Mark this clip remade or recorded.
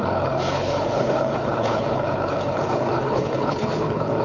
remade